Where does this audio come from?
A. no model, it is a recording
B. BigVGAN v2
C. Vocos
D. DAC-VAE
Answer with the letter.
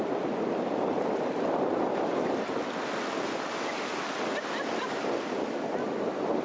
A